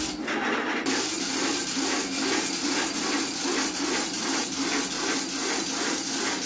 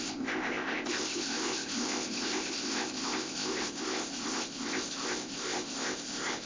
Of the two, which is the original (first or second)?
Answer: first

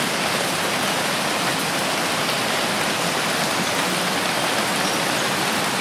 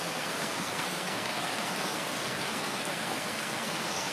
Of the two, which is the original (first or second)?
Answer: first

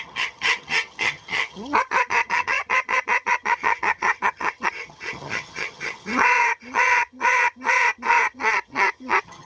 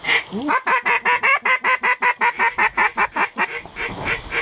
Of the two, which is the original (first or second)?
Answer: second